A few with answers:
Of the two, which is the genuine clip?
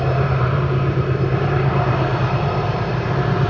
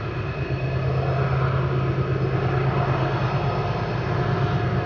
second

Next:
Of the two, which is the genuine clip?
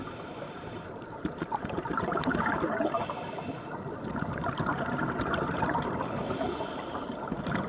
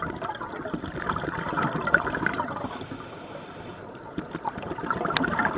second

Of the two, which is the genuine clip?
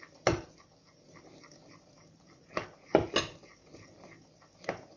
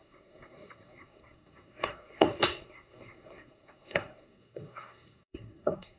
first